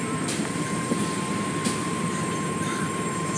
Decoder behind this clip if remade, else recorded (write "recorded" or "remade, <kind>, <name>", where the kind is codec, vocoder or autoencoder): remade, vocoder, BigVGAN v2